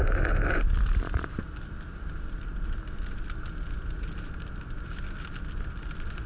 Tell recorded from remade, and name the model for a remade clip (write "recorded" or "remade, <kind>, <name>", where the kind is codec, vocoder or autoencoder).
recorded